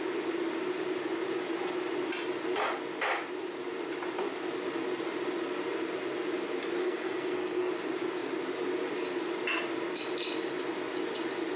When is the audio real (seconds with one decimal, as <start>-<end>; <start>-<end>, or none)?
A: 0.0-6.8; 7.7-11.6